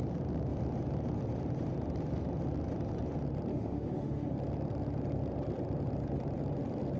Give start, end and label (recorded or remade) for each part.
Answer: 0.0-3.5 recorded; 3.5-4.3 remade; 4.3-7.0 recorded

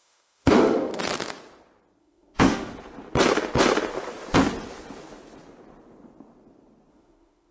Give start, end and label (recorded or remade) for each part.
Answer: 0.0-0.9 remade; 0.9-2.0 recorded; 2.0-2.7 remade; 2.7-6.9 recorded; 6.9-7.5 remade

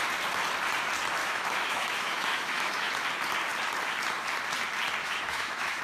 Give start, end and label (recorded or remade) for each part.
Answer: 0.0-1.2 recorded; 1.2-2.9 remade; 2.9-5.0 recorded; 5.0-5.8 remade

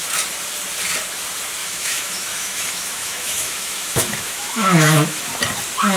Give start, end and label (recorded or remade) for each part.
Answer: 0.0-1.6 recorded; 1.6-5.2 remade; 5.2-6.0 recorded

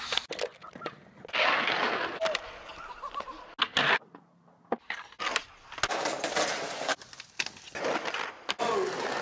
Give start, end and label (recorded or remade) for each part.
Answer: 0.0-9.2 recorded

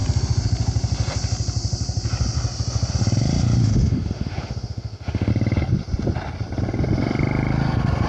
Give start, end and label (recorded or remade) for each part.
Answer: 0.0-3.6 recorded; 3.6-5.3 remade; 5.3-8.1 recorded

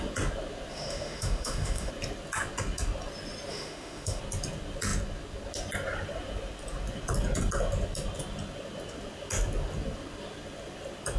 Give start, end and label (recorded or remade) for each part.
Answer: 0.0-0.7 recorded; 0.7-1.9 remade; 1.9-3.5 recorded; 3.5-4.2 remade; 4.2-11.2 recorded

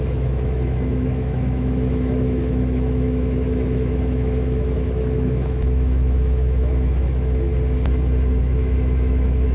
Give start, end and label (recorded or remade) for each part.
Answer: 0.0-7.5 remade; 7.5-8.4 recorded; 8.4-9.5 remade